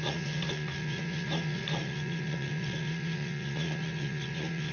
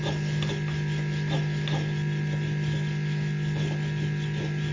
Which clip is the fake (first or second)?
first